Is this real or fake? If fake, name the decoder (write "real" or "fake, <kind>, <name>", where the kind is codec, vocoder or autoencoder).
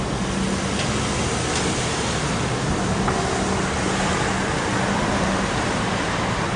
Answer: real